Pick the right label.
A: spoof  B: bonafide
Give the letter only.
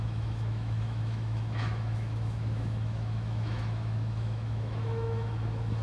A